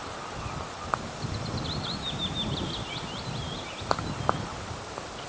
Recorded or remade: recorded